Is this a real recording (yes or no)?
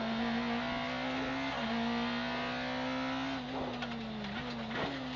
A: yes